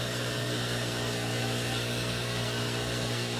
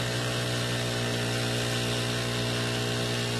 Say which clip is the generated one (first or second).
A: first